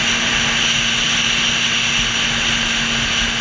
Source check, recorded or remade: recorded